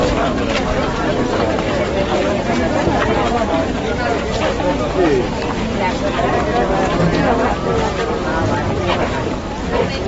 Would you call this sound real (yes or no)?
yes